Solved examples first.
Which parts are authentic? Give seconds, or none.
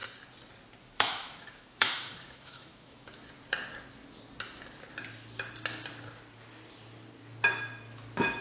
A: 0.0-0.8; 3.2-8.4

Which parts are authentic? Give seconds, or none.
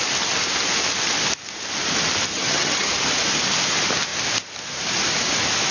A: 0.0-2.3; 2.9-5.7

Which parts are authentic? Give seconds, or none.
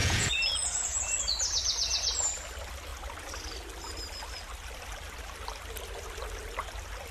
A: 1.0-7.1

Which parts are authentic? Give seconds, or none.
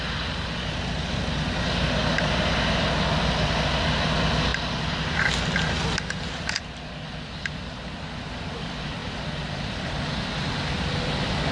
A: 0.0-4.5; 5.1-9.0; 9.8-11.5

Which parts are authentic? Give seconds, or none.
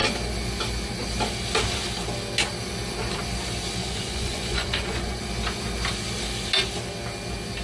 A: 0.0-3.8; 5.2-7.6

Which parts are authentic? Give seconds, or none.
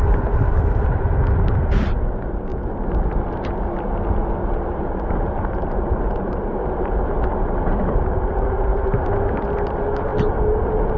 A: 0.0-4.4; 7.8-11.0